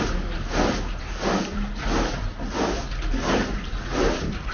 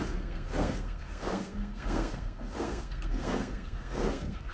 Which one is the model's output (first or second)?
second